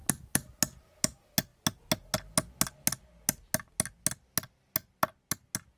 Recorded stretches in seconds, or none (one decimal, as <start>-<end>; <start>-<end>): 0.0-5.8